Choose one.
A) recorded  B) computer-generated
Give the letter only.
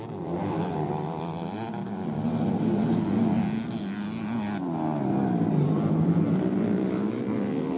A